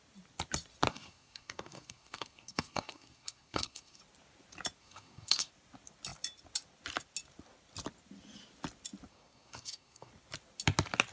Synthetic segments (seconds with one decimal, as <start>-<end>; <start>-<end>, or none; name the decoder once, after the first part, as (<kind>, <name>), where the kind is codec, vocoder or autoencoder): 0.9-4.0 (codec, SNAC); 4.8-5.5; 9.1-10.1